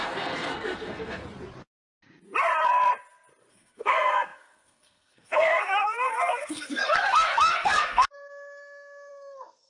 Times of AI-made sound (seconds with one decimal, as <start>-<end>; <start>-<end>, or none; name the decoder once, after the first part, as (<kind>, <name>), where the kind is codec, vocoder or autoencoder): 0.0-1.2 (codec, SNAC); 3.5-9.7